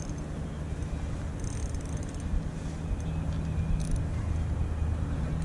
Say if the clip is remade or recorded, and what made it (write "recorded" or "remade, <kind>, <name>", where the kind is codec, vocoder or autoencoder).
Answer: recorded